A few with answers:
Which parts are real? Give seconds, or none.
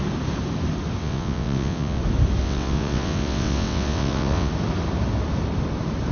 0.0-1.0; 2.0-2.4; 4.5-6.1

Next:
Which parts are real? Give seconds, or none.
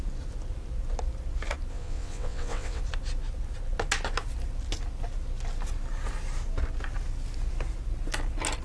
0.0-1.7; 2.8-8.6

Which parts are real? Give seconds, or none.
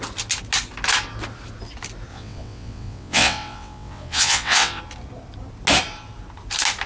0.0-2.1; 4.8-6.9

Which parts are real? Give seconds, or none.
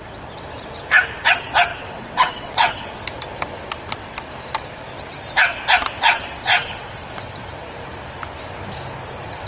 0.0-1.7; 3.0-6.4; 7.5-9.5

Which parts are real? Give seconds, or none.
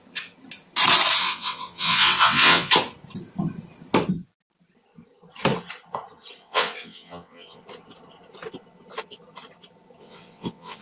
0.0-1.2; 2.7-6.4; 7.6-10.0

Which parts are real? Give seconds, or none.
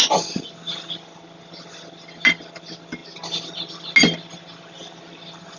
0.0-5.6